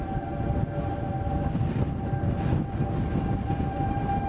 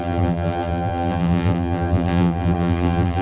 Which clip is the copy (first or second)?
second